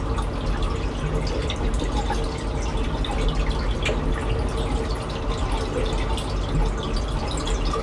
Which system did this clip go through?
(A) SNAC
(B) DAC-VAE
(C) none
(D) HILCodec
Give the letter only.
C